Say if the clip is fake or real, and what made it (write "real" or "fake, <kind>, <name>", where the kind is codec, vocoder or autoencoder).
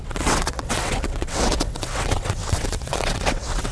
fake, vocoder, WaveNeXt